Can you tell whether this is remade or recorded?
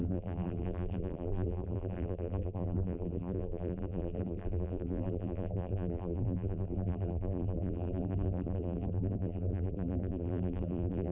remade